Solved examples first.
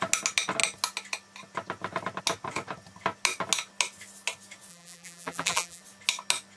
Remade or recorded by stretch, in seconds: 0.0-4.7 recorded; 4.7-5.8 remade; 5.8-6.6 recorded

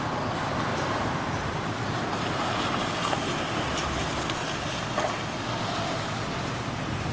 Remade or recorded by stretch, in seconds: 0.0-0.7 recorded; 0.7-3.9 remade; 3.9-7.1 recorded

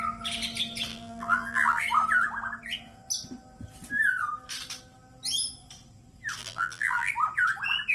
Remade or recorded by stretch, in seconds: 0.0-0.9 recorded; 0.9-1.8 remade; 1.8-6.4 recorded; 6.4-7.1 remade; 7.1-7.9 recorded